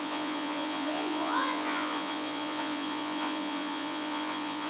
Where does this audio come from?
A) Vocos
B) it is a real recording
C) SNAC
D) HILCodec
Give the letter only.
A